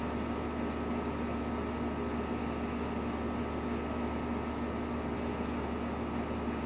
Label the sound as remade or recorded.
recorded